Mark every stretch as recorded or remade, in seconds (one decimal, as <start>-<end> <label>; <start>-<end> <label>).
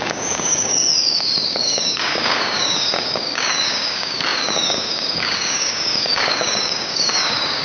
0.0-7.6 remade